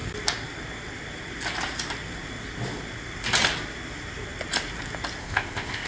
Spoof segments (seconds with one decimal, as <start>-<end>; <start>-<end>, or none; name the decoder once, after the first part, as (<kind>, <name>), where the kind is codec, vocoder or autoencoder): 5.2-5.9 (codec, ZipCodec)